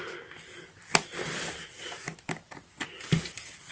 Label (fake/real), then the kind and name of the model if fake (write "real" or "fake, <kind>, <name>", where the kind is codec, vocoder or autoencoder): real